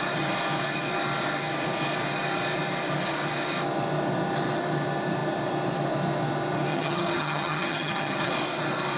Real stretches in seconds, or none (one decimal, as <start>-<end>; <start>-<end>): 0.0-6.7; 8.3-9.0